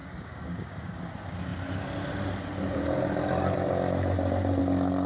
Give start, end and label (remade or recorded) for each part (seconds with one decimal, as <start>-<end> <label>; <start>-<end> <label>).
0.0-1.0 remade; 1.0-5.1 recorded

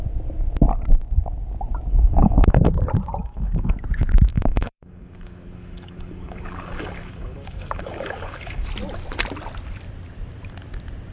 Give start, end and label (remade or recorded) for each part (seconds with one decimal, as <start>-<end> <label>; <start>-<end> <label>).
0.0-1.9 recorded; 1.9-2.7 remade; 2.7-3.2 recorded; 3.2-3.7 remade; 3.7-4.3 recorded; 4.3-8.7 remade; 8.7-11.1 recorded

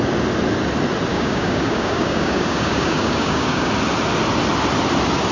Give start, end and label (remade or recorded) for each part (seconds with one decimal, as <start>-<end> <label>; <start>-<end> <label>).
0.0-1.1 recorded; 1.1-3.7 remade; 3.7-5.3 recorded

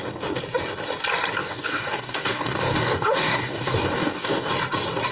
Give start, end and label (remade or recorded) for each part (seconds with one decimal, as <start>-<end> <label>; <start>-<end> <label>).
0.0-1.4 recorded; 1.4-4.5 remade; 4.5-5.1 recorded

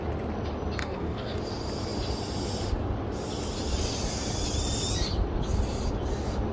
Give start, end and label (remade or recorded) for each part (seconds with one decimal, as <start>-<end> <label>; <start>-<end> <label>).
0.0-0.8 recorded; 0.8-1.4 remade; 1.4-6.5 recorded

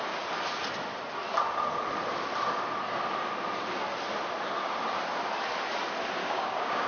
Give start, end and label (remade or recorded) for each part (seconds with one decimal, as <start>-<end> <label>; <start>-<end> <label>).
0.0-6.2 recorded; 6.2-6.9 remade